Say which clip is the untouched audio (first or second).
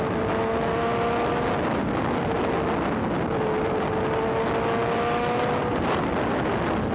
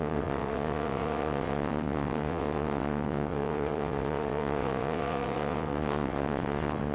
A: first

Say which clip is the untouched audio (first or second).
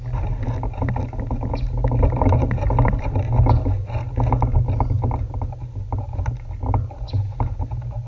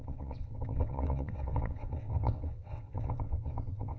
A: first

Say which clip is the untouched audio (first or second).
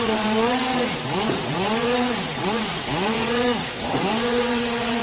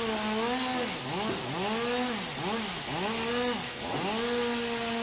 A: second